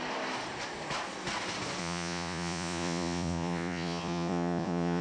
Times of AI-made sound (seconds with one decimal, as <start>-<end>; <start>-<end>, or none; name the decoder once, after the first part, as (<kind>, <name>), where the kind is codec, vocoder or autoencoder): 1.8-5.0 (vocoder, Vocos)